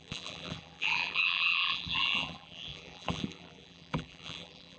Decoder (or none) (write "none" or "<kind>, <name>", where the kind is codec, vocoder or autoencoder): vocoder, BigVGAN v2